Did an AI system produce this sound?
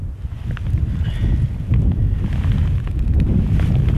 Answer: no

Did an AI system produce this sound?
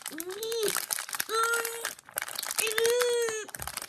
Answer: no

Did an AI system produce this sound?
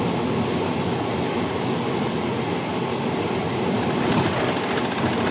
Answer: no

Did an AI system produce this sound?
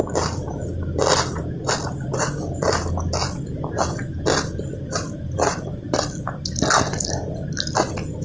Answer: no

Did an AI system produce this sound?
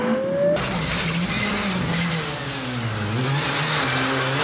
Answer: no